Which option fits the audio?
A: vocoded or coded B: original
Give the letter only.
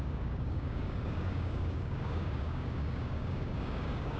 A